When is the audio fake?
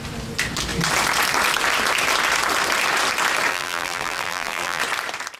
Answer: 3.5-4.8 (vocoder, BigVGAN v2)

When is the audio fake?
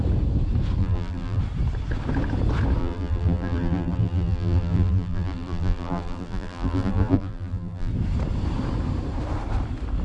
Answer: 0.8-1.4 (vocoder, BigVGAN v2); 2.8-7.9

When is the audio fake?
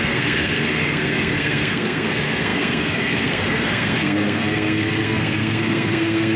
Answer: 0.0-6.4 (codec, SNAC)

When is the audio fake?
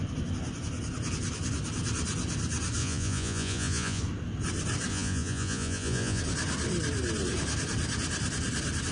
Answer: 2.8-4.0 (vocoder, Vocos); 4.9-6.2